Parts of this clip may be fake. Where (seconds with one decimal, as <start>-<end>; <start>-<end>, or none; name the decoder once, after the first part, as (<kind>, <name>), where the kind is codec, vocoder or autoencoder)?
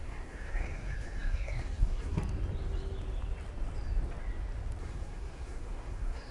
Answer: 0.0-2.2 (codec, SNAC); 4.8-6.3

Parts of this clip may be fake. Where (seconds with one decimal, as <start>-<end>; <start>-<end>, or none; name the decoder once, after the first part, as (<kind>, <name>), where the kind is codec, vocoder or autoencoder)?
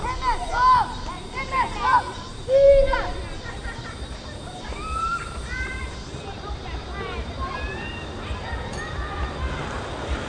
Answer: none